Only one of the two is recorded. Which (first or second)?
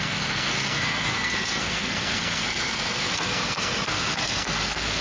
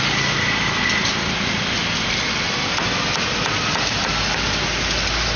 second